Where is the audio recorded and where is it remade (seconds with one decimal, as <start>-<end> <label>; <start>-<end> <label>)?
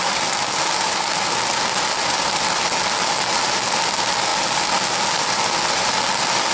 0.0-6.5 recorded